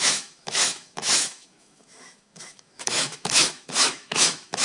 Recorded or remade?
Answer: remade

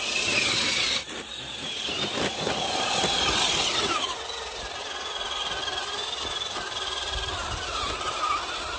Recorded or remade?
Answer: recorded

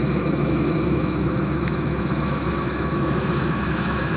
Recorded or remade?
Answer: remade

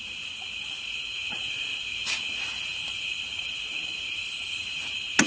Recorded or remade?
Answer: recorded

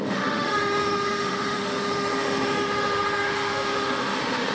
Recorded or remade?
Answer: remade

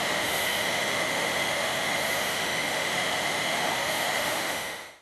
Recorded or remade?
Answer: remade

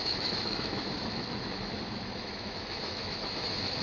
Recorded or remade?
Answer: remade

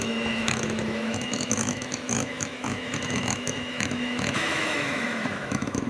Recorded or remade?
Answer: remade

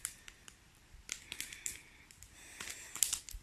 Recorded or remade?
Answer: recorded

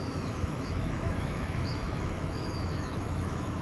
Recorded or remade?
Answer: remade